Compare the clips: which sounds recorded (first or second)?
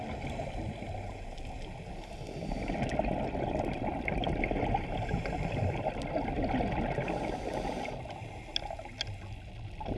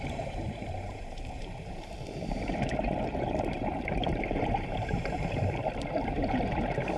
first